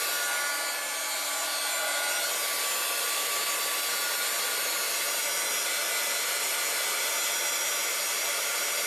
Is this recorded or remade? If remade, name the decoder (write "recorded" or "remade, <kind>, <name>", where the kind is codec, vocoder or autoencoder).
recorded